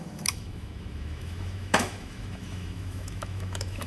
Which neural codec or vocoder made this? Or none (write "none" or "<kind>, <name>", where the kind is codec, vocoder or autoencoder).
autoencoder, DAC-VAE